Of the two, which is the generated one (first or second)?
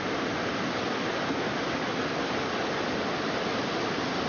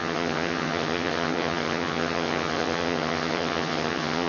second